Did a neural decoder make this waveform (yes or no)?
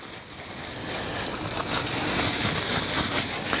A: no